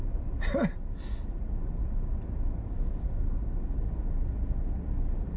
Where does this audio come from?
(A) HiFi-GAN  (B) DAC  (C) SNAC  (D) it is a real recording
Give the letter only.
D